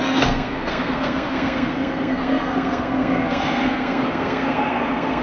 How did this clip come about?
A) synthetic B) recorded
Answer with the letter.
A